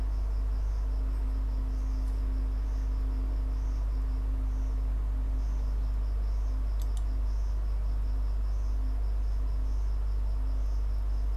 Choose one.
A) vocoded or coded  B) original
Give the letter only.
B